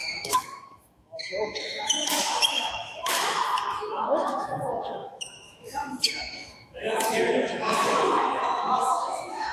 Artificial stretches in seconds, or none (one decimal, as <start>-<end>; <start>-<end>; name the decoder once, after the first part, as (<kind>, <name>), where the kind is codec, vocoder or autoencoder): 0.0-9.5 (autoencoder, DAC-VAE)